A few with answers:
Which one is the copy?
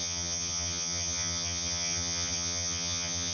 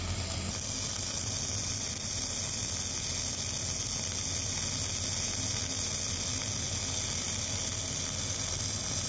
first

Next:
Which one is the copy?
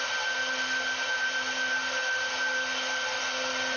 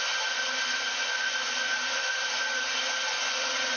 second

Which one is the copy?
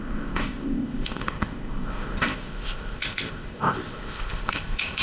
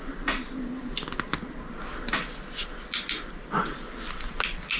first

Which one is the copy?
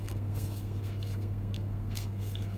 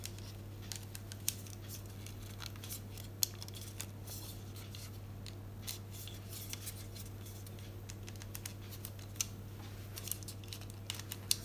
first